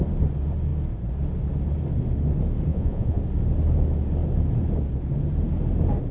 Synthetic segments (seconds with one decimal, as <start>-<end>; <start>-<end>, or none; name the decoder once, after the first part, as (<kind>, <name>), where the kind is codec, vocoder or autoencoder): 2.7-3.2 (vocoder, Vocos)